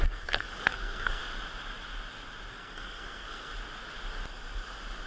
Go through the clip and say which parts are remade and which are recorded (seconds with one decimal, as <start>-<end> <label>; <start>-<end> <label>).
0.0-1.2 remade; 1.2-2.5 recorded; 2.5-3.5 remade; 3.5-5.1 recorded